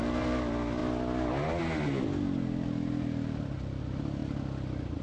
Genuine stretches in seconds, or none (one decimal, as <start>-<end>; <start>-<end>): 0.0-5.0